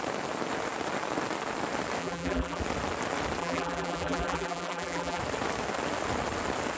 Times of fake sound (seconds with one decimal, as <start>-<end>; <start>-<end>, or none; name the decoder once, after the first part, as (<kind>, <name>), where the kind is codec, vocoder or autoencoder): 2.0-2.6 (vocoder, BigVGAN v2); 3.4-5.2